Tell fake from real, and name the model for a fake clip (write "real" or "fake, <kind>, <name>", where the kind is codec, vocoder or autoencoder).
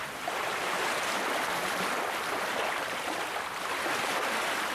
real